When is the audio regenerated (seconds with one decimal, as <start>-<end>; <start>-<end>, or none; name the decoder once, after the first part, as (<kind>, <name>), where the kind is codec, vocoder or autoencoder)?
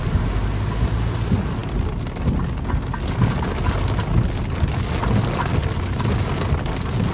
none